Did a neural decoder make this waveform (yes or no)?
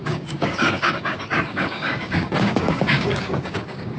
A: yes